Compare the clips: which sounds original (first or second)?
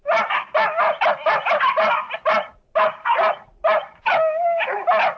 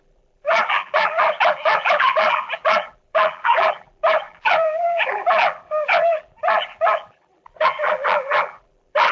first